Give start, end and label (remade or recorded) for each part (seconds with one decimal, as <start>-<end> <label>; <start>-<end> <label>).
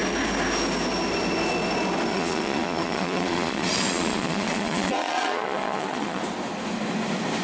0.0-2.1 recorded; 2.1-6.2 remade; 6.2-7.4 recorded